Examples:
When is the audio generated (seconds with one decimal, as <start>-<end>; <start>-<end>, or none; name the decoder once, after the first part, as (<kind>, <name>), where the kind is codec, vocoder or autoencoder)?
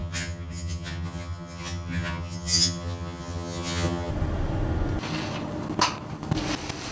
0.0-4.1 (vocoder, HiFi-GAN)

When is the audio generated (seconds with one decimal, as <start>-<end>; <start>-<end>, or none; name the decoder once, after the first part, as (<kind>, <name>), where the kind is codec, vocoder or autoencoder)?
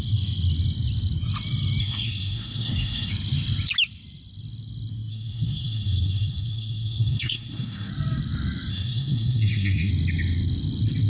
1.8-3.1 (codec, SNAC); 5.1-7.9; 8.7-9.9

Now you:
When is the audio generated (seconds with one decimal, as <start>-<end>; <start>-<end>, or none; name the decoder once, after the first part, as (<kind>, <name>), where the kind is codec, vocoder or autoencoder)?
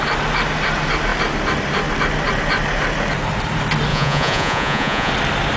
3.9-5.1 (vocoder, Vocos)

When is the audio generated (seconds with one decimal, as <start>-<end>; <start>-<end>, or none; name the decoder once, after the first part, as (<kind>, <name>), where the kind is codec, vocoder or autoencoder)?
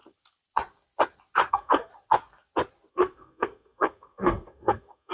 1.5-1.9 (codec, SNAC); 2.9-5.1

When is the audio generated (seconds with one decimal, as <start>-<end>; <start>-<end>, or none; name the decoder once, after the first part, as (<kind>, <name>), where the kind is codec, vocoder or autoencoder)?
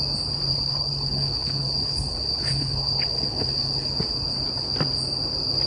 0.5-3.9 (codec, HILCodec)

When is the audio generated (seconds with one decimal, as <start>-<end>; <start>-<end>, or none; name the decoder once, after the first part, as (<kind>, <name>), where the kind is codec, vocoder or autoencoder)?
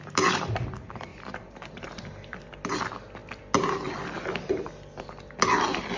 1.1-2.0 (vocoder, BigVGAN v2)